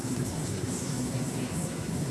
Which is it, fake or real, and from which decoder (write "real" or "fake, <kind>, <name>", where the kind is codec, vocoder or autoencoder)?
fake, codec, SNAC